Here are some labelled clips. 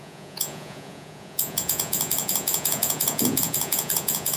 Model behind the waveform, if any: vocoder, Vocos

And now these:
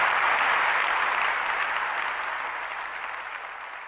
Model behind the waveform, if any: none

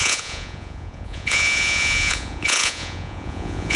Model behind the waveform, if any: vocoder, Vocos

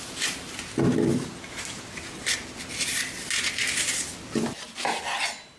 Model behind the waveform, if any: none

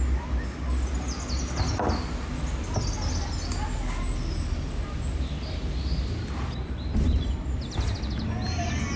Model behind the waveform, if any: none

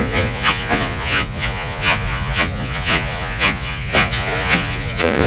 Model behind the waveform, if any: vocoder, Vocos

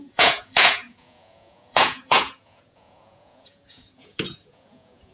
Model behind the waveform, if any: vocoder, Vocos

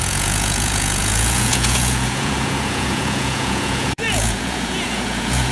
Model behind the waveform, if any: vocoder, Vocos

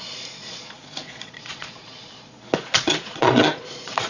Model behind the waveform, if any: vocoder, Vocos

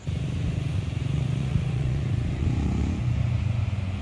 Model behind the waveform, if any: vocoder, Vocos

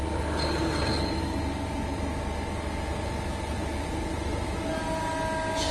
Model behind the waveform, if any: none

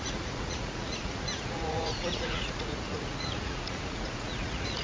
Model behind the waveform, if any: vocoder, Vocos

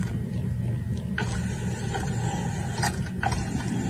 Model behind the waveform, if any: none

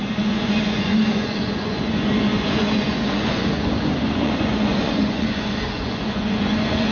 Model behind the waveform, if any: vocoder, Vocos